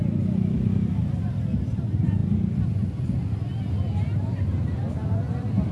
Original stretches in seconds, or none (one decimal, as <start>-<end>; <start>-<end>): 0.0-5.7

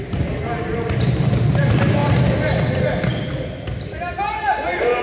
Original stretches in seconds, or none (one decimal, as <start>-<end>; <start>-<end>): 0.0-5.0

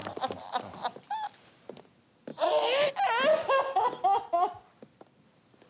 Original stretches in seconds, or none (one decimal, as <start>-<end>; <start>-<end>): 1.8-5.7